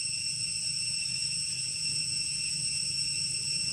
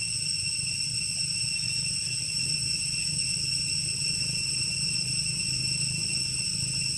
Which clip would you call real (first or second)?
second